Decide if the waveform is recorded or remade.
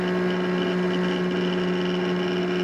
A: recorded